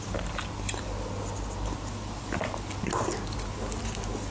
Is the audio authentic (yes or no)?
yes